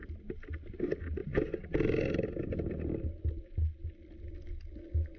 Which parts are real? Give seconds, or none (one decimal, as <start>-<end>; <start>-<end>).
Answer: 0.0-5.2

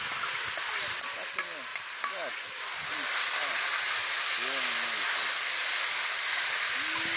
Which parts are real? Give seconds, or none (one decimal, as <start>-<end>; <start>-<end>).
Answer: 0.0-1.7; 4.3-7.2

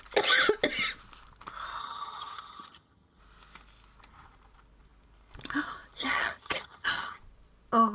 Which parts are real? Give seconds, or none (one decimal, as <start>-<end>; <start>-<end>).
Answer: 0.0-1.8; 3.2-6.0; 7.2-7.9

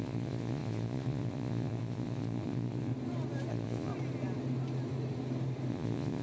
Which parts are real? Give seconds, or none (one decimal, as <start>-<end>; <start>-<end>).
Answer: 2.9-3.5; 3.9-5.7

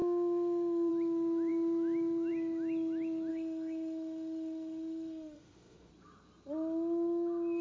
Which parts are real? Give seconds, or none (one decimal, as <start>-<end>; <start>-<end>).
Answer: 0.9-3.3; 5.9-7.6

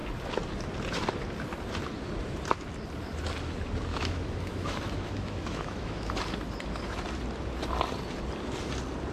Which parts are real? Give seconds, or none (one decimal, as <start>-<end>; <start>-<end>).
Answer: 0.0-3.9; 6.1-9.1

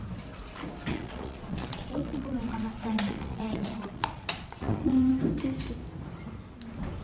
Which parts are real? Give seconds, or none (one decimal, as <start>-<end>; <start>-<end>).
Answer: 0.0-0.9; 5.1-7.0